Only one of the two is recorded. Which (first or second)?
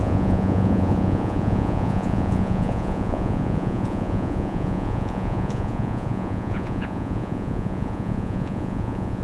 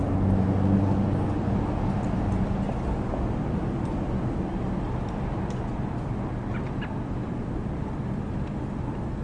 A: second